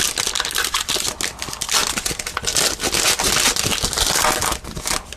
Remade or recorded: recorded